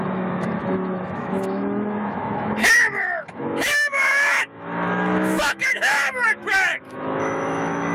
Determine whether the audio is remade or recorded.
remade